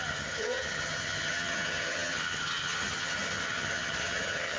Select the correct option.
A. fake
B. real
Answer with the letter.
A